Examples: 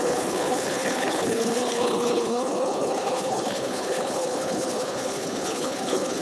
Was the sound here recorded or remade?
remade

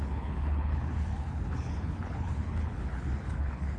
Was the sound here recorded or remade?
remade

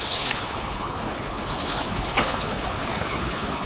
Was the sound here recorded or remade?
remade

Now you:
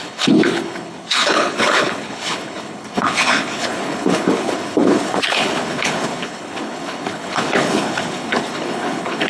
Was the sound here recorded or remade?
remade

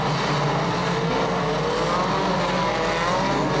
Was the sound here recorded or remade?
recorded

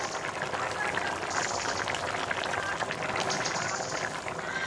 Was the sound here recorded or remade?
recorded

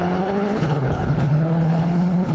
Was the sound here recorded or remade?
remade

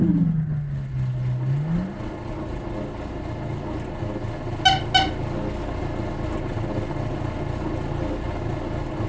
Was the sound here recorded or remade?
recorded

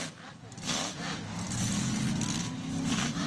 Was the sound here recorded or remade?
recorded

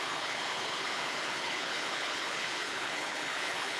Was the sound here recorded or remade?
remade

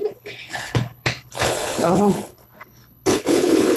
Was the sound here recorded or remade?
remade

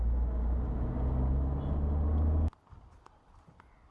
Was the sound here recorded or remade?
recorded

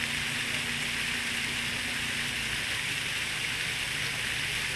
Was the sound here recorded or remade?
recorded